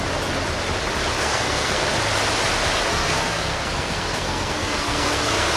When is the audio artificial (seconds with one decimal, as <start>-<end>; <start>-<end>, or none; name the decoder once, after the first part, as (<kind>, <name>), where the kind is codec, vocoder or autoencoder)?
1.2-1.9 (codec, SNAC); 2.9-5.6